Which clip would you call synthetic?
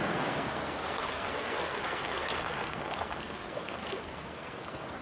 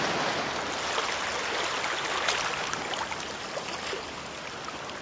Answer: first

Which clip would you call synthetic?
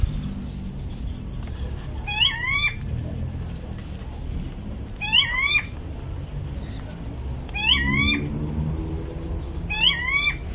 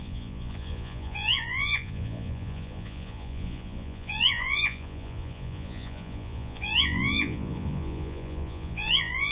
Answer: second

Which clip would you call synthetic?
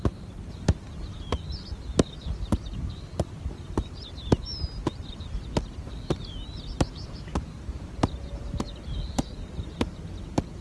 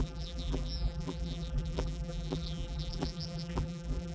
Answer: second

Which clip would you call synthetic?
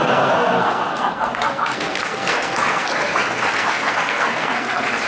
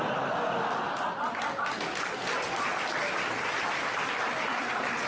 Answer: first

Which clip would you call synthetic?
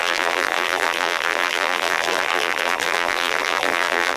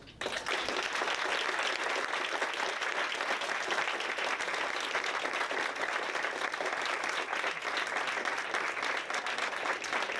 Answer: first